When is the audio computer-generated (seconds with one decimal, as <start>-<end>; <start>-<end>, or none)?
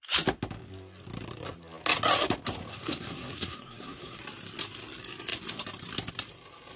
2.7-4.2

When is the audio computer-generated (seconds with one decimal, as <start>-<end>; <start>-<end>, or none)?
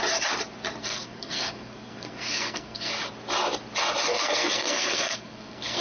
0.8-2.9; 4.1-5.8